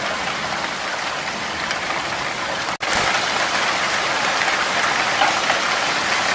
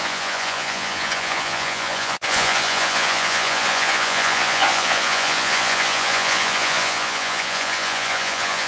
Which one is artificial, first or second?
second